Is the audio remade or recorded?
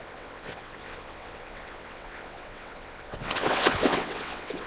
remade